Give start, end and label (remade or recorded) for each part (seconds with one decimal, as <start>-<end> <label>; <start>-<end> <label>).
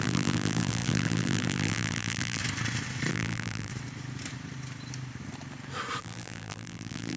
0.0-2.4 remade; 2.4-3.1 recorded; 3.1-3.7 remade; 3.7-6.0 recorded; 6.0-7.2 remade